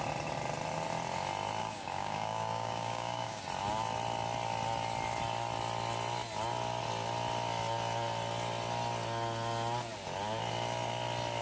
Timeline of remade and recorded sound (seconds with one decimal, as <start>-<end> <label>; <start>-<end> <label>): 0.0-1.6 recorded; 1.6-3.4 remade; 3.4-11.4 recorded